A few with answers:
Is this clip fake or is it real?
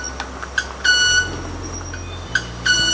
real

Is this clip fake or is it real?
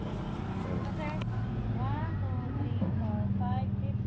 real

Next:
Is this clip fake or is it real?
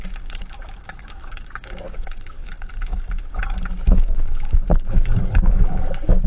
fake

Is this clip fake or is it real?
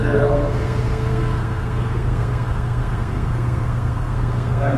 fake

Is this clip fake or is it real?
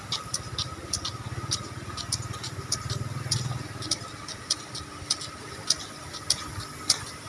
real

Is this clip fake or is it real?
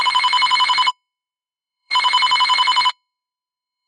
fake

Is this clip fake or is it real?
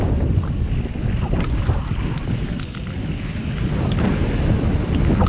real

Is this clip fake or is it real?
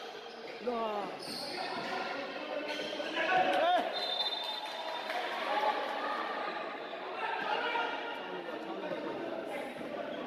real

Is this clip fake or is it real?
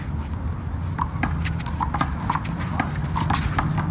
real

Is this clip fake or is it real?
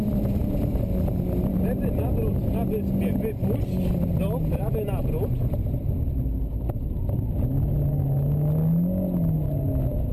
real